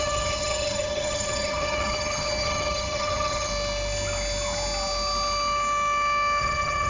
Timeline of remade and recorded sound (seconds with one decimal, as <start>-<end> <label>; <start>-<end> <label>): 0.0-3.5 remade; 3.5-6.4 recorded; 6.4-6.9 remade